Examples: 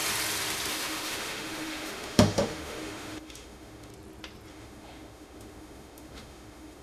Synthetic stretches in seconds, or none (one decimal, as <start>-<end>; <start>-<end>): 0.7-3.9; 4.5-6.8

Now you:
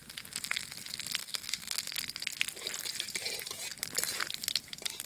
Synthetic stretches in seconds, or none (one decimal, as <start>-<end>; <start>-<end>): 1.2-1.8

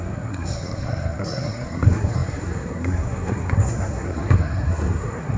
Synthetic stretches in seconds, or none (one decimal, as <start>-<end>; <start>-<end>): 0.0-5.4